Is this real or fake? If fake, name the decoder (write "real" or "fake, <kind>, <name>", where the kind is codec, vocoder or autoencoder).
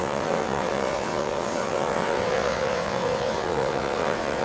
fake, vocoder, WaveNeXt